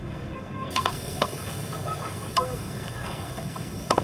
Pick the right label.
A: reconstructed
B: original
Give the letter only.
A